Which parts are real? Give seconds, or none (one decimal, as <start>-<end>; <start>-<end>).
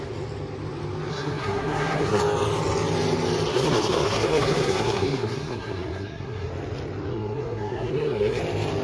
0.0-1.1; 2.2-3.5; 6.5-7.1; 8.4-8.8